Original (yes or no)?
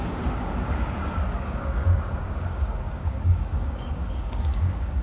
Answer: no